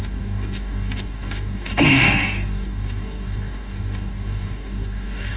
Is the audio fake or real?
fake